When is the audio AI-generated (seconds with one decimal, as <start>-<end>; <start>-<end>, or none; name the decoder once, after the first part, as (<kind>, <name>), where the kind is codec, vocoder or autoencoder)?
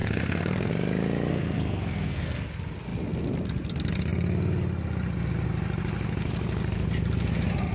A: 0.0-0.7 (codec, SNAC); 1.3-2.4